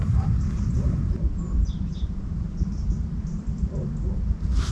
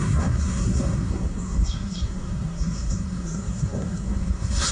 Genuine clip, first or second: first